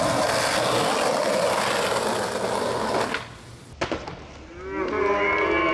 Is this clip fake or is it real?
real